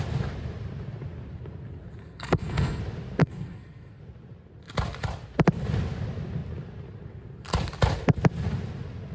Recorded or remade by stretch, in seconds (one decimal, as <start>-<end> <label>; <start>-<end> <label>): 0.0-2.0 recorded; 2.0-2.8 remade; 2.8-3.2 recorded; 3.2-4.0 remade; 4.0-9.1 recorded